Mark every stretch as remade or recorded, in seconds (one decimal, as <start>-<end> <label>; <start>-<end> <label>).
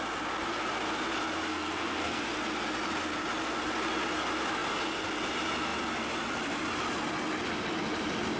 0.0-1.5 recorded; 1.5-2.2 remade; 2.2-8.4 recorded